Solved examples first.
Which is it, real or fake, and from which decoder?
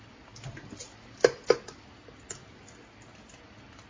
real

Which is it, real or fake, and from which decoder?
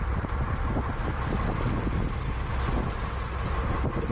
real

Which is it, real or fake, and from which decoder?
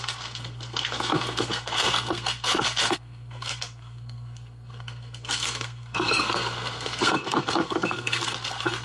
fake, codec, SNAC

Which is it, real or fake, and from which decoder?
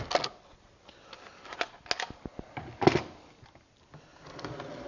real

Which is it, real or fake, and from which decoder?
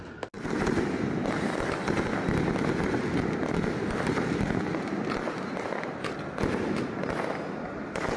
real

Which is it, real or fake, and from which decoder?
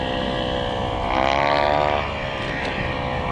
real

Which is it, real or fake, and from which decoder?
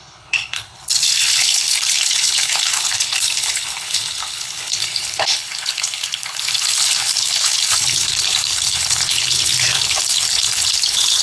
fake, codec, HILCodec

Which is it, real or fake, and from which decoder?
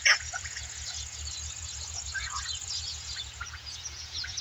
fake, vocoder, Vocos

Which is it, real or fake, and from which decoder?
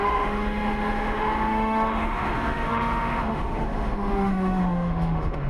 fake, autoencoder, DAC-VAE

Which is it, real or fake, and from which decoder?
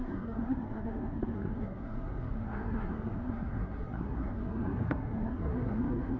fake, codec, SNAC